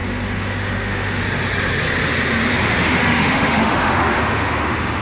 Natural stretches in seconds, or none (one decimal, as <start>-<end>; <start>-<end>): 1.2-2.5